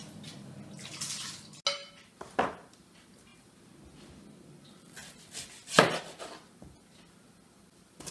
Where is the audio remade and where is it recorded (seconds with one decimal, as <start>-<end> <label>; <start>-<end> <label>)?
0.0-8.1 recorded